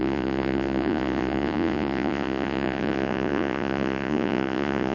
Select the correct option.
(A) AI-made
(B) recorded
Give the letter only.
A